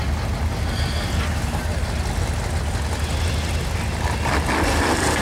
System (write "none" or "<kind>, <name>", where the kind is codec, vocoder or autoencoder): none